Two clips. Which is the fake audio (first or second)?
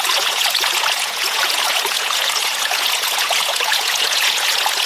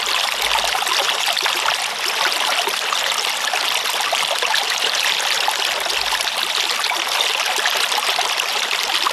first